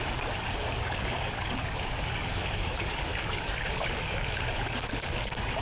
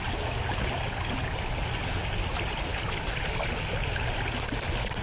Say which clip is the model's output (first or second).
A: first